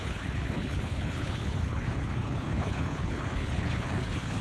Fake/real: fake